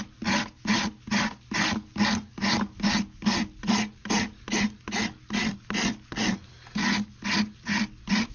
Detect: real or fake real